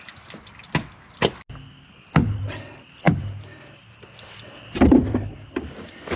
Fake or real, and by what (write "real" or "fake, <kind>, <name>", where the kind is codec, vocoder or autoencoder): real